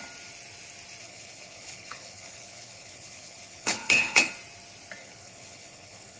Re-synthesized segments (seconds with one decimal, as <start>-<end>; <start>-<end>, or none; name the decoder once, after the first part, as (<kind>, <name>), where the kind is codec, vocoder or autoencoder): 1.0-4.3 (codec, HILCodec); 5.0-6.2